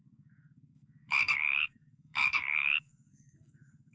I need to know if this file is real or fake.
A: fake